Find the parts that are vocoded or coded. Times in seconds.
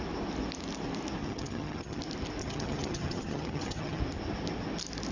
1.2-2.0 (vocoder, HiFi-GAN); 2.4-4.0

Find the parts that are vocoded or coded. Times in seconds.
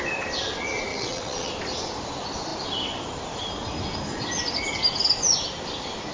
0.9-1.5 (vocoder, WaveNeXt)